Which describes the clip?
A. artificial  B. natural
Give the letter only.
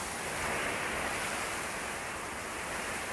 B